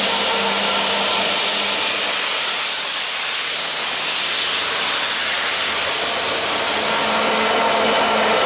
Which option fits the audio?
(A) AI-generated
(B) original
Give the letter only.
B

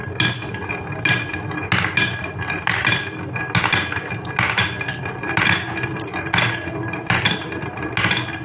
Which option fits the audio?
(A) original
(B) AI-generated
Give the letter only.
A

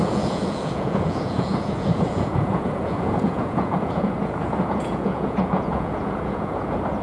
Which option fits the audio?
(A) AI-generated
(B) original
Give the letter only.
A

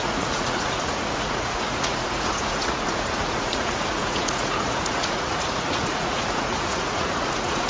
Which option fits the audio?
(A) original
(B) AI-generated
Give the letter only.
B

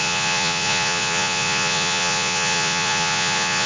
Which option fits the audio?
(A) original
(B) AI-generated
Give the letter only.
B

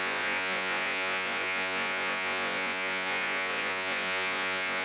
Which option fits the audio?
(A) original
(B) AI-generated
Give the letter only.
B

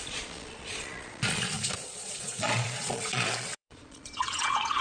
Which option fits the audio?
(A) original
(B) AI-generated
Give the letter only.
B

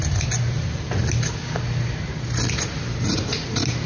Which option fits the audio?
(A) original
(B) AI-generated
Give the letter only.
A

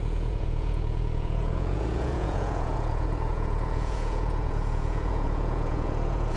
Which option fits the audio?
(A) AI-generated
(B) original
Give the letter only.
A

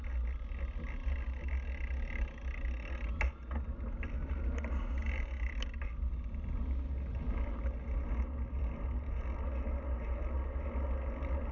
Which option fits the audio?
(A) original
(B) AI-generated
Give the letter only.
A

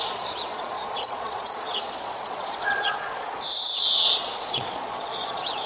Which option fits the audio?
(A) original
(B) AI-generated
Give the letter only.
B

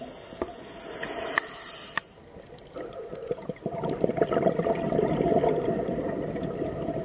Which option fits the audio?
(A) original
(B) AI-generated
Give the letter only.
A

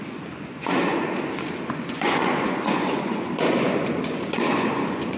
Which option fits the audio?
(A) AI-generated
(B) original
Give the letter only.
A